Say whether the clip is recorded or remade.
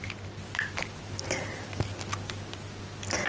recorded